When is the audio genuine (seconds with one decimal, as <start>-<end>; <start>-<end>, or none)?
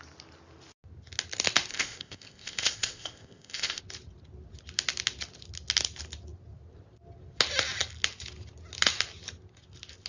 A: 0.0-1.7; 3.8-10.1